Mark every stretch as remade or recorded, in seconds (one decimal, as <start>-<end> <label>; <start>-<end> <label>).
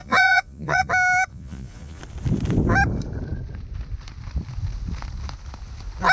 0.0-0.9 remade; 0.9-1.3 recorded; 1.3-2.0 remade; 2.0-6.1 recorded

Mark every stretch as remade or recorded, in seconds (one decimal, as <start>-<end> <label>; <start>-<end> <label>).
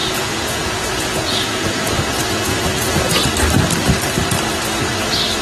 0.0-3.2 remade; 3.2-5.4 recorded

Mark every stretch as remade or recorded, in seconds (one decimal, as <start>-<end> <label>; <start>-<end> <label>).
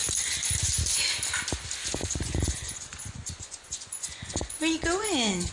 0.0-2.0 recorded; 2.0-5.5 remade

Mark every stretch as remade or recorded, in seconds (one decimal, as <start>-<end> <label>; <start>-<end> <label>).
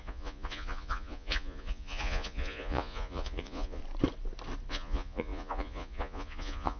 0.0-3.8 remade; 3.8-4.7 recorded; 4.7-6.8 remade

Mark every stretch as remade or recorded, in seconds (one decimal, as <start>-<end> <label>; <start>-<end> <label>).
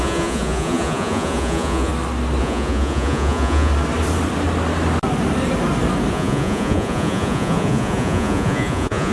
0.0-1.9 remade; 1.9-2.4 recorded; 2.4-3.7 remade; 3.7-6.1 recorded; 6.1-9.1 remade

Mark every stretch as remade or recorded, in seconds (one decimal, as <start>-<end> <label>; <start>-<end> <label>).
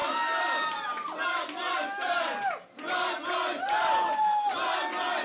0.0-5.2 recorded